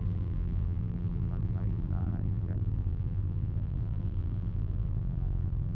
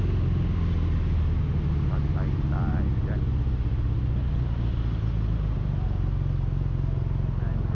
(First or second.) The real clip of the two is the second